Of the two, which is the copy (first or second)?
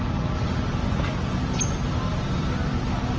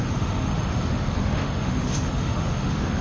second